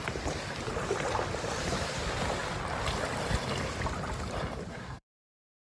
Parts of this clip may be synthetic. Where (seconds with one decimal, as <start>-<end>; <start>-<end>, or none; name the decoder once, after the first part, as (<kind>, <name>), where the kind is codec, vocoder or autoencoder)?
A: 4.7-5.6 (codec, SNAC)